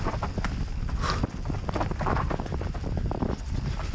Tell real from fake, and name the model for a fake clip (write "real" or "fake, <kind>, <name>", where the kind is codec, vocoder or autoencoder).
real